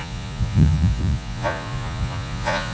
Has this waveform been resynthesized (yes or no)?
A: yes